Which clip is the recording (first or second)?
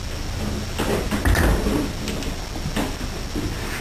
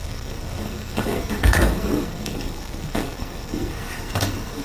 first